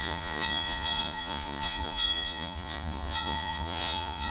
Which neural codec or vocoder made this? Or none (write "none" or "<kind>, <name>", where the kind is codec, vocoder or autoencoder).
vocoder, Vocos